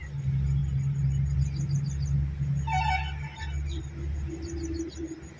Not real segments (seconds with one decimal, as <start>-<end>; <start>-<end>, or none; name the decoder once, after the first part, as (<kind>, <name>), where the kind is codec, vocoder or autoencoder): none